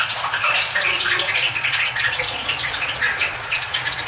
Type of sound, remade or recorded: remade